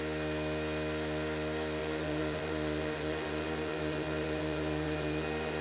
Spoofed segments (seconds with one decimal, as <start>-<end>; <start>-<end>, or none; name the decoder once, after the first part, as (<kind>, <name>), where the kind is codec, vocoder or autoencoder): 1.8-5.6 (vocoder, BigVGAN v2)